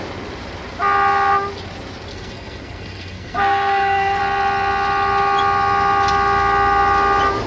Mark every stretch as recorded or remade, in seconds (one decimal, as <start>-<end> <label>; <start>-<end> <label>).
0.0-2.1 recorded; 2.1-4.2 remade; 4.2-7.5 recorded

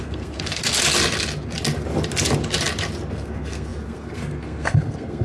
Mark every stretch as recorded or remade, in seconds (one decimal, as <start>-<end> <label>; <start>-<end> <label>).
0.0-0.6 remade; 0.6-3.1 recorded; 3.1-5.2 remade

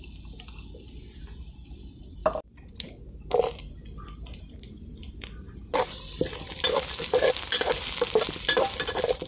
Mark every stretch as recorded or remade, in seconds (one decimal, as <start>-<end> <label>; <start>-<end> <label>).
0.0-9.3 recorded

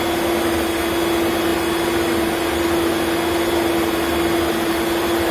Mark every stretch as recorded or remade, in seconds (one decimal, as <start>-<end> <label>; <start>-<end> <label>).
0.0-5.3 recorded